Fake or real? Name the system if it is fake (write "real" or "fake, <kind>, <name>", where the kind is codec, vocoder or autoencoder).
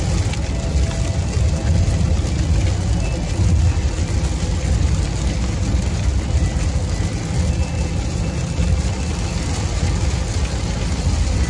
real